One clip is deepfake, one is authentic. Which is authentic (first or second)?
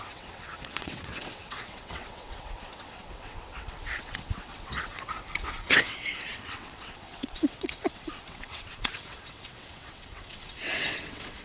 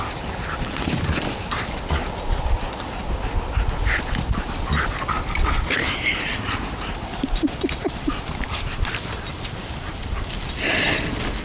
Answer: second